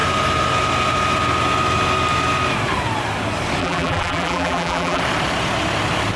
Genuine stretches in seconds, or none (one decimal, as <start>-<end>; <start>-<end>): 0.0-3.6; 5.0-6.2